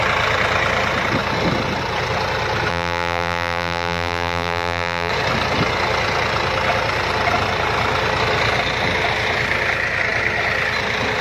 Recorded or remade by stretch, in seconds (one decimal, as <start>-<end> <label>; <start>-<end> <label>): 0.0-2.7 recorded; 2.7-5.1 remade; 5.1-11.2 recorded